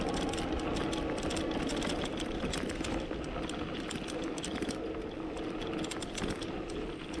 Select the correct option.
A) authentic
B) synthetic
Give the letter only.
A